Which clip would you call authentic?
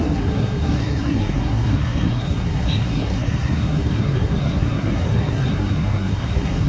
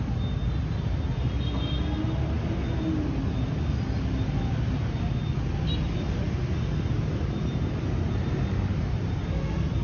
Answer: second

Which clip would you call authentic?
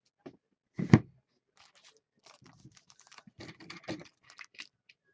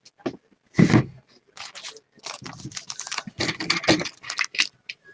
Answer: second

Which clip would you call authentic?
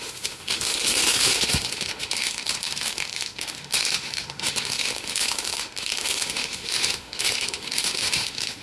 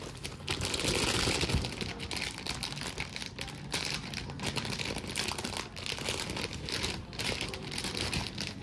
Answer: second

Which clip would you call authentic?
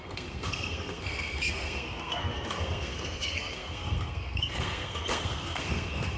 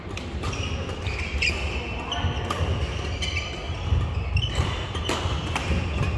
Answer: second